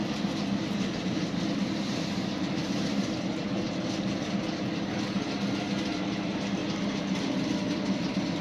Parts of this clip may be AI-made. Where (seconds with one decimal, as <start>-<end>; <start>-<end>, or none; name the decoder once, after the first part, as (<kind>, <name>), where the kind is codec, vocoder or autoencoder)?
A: 0.0-3.2 (vocoder, BigVGAN v2); 6.6-7.5

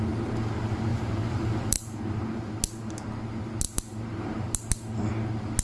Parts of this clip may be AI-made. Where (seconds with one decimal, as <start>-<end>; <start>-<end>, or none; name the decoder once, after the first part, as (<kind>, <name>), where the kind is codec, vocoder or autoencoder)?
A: 0.9-2.5 (vocoder, BigVGAN v2); 3.9-4.6

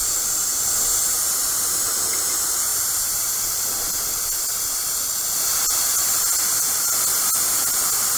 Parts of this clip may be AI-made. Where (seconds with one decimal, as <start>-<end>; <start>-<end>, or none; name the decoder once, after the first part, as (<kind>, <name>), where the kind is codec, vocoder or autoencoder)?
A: none

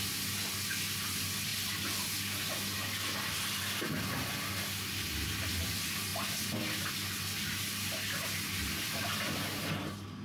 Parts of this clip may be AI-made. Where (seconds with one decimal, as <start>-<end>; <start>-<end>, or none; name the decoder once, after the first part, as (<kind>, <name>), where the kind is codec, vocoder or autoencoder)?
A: none

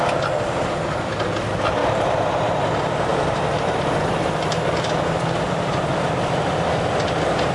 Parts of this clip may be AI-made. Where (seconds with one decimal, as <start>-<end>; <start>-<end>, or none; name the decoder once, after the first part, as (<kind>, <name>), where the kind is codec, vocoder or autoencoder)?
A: 1.8-2.5 (vocoder, BigVGAN v2); 3.1-6.1

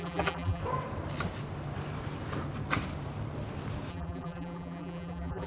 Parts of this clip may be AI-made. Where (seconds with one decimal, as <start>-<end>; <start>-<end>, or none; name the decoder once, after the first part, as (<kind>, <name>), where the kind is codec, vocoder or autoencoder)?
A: 0.0-0.6 (vocoder, BigVGAN v2); 3.9-5.5

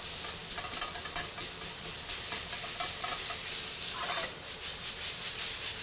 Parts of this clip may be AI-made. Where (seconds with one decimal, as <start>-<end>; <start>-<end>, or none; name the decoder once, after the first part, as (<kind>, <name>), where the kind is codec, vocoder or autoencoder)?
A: none